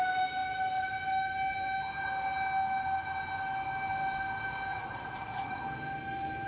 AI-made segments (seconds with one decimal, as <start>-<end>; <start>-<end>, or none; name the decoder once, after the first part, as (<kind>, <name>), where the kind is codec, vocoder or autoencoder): 4.7-5.6 (vocoder, Vocos)